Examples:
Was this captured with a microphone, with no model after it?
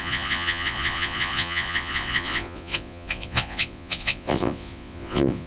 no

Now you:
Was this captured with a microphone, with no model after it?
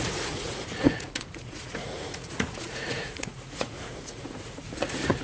no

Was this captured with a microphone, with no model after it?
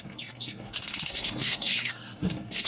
no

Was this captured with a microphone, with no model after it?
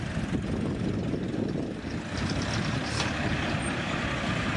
yes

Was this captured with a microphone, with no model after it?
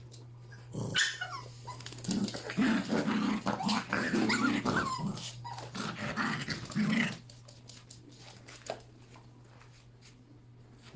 yes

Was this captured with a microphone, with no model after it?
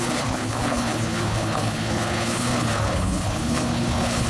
no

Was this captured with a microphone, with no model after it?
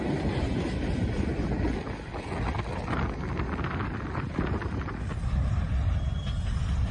yes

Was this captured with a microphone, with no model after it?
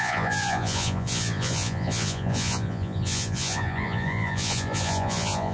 no